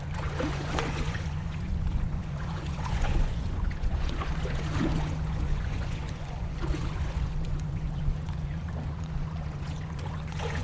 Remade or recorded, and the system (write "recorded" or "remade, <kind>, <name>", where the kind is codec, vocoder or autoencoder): remade, vocoder, Vocos